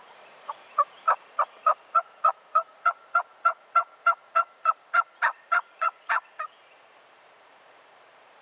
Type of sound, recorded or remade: remade